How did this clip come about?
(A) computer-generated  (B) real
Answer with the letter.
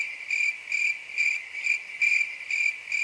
B